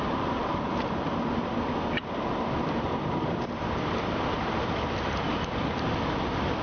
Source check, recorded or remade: remade